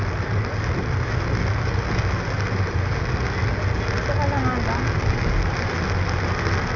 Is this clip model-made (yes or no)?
no